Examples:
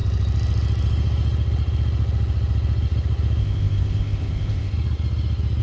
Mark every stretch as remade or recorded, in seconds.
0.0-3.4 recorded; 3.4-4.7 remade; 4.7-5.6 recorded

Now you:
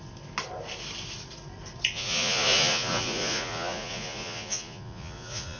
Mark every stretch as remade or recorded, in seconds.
0.0-1.9 recorded; 1.9-5.6 remade

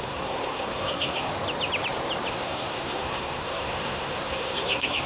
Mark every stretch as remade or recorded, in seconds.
0.0-1.3 remade; 1.3-2.3 recorded; 2.3-5.1 remade

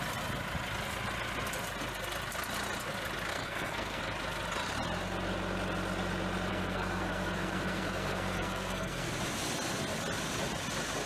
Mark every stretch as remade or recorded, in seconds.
0.0-3.3 recorded; 3.3-4.0 remade; 4.0-6.5 recorded; 6.5-9.1 remade; 9.1-11.1 recorded

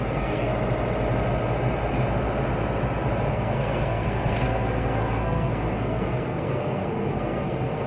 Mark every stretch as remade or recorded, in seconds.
0.0-0.5 remade; 0.5-3.3 recorded; 3.3-7.9 remade

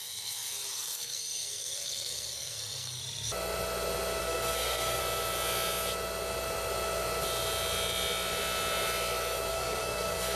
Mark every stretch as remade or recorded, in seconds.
0.0-3.0 remade; 3.0-4.2 recorded; 4.2-5.0 remade; 5.0-9.5 recorded; 9.5-10.4 remade

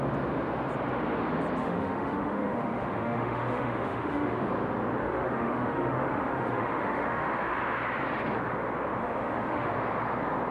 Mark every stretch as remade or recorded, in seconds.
0.0-1.6 recorded; 1.6-4.5 remade; 4.5-5.0 recorded; 5.0-7.6 remade; 7.6-9.0 recorded; 9.0-9.7 remade; 9.7-10.5 recorded

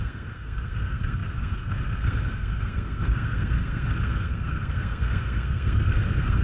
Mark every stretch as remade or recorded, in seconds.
0.0-6.4 remade